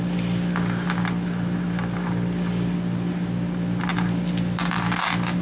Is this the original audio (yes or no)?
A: yes